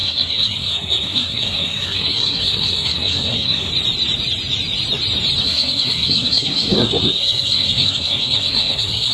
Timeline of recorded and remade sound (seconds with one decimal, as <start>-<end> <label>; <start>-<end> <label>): 0.0-3.7 remade; 3.7-5.4 recorded; 5.4-9.1 remade